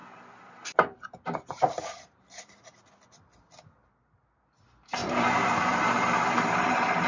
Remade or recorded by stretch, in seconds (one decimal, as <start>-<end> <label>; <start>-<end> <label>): 0.0-2.9 remade; 2.9-5.0 recorded; 5.0-7.1 remade